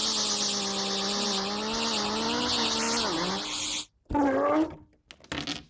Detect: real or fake real